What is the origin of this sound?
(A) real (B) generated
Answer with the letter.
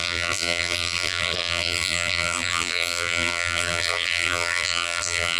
B